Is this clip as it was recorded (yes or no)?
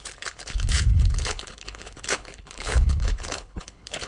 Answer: no